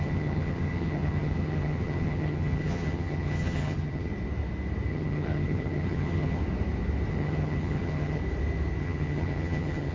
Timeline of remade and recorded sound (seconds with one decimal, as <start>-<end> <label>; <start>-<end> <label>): 0.0-4.1 remade; 4.1-4.9 recorded; 4.9-6.4 remade; 6.4-7.1 recorded; 7.1-8.2 remade; 8.2-8.8 recorded; 8.8-9.9 remade